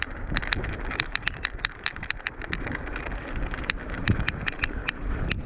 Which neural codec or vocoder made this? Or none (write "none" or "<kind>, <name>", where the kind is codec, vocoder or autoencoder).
none